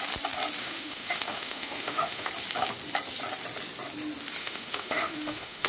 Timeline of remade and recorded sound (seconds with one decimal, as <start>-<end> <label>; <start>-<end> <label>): 0.0-0.6 recorded; 0.6-2.3 remade; 2.3-4.4 recorded; 4.4-5.7 remade